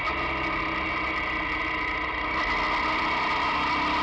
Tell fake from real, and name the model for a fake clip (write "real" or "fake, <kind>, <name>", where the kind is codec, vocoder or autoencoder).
real